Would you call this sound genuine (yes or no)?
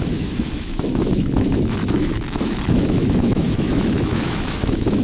no